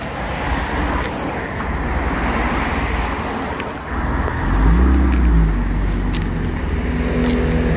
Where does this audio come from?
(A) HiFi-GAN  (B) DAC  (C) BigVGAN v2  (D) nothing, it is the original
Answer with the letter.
D